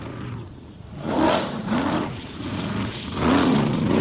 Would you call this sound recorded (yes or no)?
no